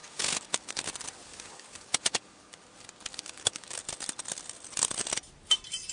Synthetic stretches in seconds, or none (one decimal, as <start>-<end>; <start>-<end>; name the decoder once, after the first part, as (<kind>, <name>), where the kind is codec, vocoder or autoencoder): 0.0-0.7 (codec, DAC); 1.3-2.6; 3.1-3.8